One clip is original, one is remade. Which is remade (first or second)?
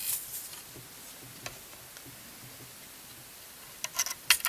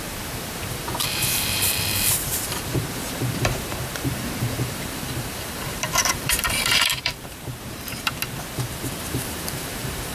second